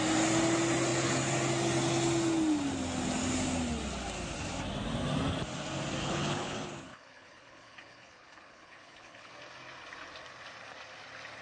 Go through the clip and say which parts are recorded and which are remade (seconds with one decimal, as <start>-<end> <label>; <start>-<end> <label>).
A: 0.0-6.0 recorded; 6.0-9.3 remade; 9.3-11.4 recorded